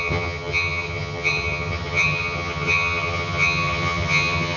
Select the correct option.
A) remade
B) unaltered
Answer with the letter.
A